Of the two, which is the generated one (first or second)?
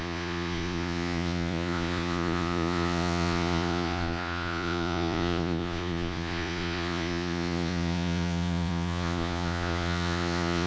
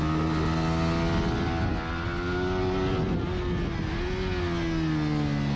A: first